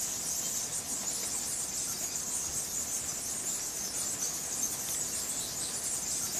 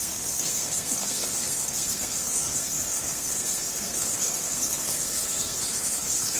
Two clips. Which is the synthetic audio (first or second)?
second